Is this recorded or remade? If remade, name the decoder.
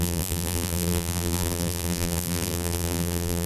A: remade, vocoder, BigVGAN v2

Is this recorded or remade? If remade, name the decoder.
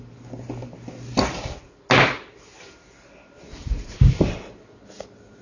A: recorded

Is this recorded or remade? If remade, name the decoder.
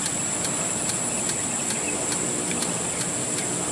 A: recorded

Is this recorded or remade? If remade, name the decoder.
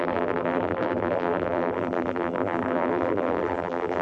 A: remade, vocoder, BigVGAN v2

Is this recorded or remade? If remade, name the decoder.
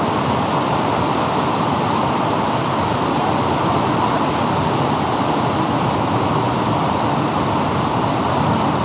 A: remade, vocoder, BigVGAN v2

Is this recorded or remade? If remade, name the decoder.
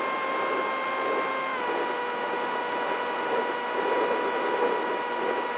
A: recorded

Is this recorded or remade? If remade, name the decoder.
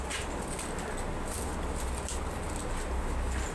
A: recorded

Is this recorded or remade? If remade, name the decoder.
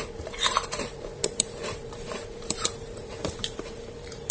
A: remade, vocoder, BigVGAN v2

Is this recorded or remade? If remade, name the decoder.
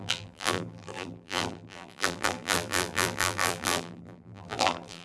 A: remade, vocoder, BigVGAN v2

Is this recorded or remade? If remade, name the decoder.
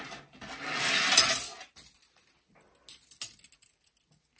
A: recorded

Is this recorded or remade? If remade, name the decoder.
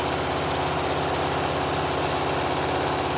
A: recorded